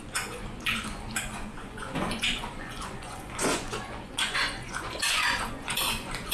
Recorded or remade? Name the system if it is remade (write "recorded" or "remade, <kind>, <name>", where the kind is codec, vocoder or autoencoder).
remade, vocoder, Vocos